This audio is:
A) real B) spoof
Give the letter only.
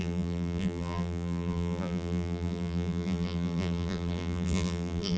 B